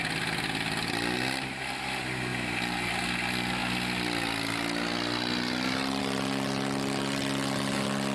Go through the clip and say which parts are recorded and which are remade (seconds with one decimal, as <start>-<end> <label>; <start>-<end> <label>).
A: 0.0-8.1 recorded